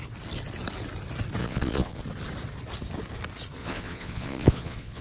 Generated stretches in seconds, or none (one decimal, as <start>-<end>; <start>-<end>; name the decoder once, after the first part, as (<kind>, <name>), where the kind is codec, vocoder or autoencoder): 1.4-2.0 (vocoder, Vocos); 3.6-5.0